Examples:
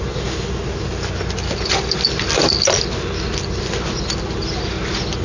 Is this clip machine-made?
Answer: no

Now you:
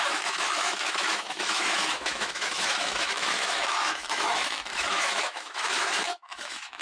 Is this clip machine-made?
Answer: yes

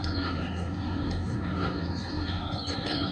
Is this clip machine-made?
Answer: yes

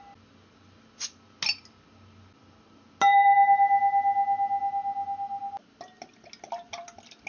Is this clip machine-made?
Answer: no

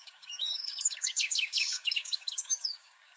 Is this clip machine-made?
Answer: yes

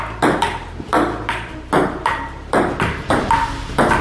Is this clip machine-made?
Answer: no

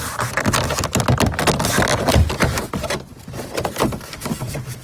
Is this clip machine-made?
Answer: no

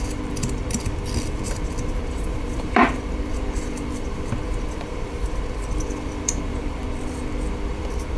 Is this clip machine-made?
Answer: yes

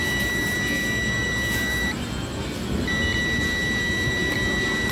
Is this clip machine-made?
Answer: no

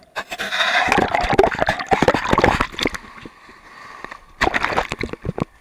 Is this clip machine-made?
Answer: no